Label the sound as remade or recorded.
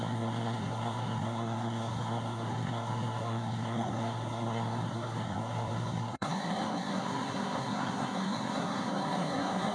remade